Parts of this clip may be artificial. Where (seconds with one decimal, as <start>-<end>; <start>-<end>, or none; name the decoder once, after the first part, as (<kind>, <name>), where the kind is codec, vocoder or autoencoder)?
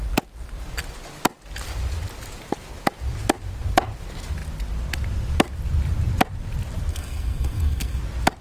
6.9-8.0 (codec, SNAC)